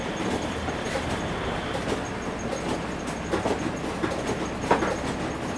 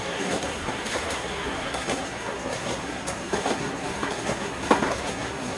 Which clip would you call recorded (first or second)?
first